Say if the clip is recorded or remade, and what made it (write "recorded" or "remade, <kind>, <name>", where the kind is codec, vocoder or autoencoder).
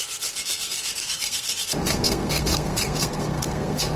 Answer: remade, codec, SNAC